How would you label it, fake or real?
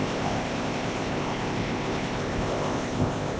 fake